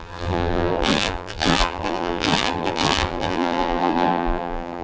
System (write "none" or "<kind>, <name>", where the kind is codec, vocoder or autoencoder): vocoder, BigVGAN v2